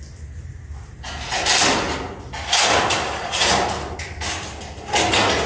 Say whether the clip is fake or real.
real